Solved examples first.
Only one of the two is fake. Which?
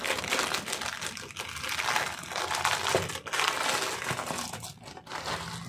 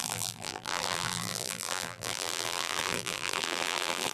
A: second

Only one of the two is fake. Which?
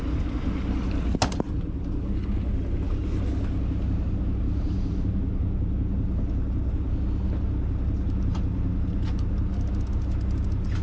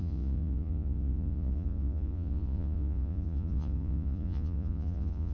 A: second